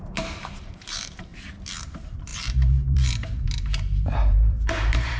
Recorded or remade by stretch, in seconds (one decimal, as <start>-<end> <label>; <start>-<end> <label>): 0.0-1.3 remade; 1.3-1.8 recorded; 1.8-5.2 remade